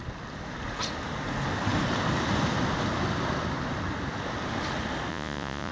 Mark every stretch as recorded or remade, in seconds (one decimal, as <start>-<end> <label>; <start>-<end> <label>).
0.0-5.1 recorded; 5.1-5.7 remade